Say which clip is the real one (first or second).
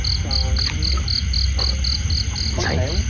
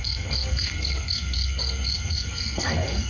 first